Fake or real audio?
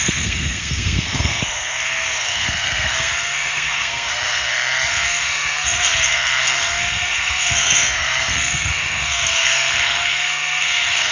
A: fake